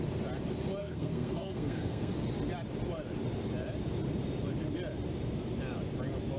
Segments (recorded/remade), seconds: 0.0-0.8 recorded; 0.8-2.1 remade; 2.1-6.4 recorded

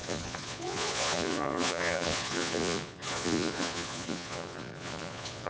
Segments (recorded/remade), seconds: 0.0-5.5 remade

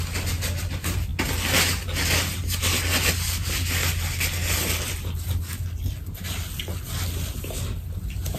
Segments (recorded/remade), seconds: 0.0-8.4 recorded

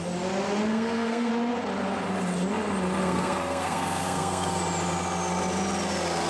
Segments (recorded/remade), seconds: 0.0-0.7 recorded; 0.7-1.3 remade; 1.3-3.0 recorded; 3.0-4.6 remade; 4.6-6.3 recorded

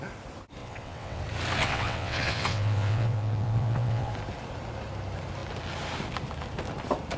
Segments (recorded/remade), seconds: 0.0-0.6 recorded; 0.6-1.2 remade; 1.2-1.6 recorded; 1.6-4.1 remade; 4.1-7.2 recorded

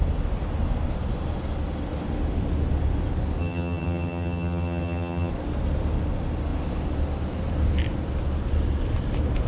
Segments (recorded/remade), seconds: 0.0-3.4 recorded; 3.4-5.3 remade; 5.3-9.5 recorded